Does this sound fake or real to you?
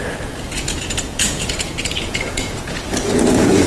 fake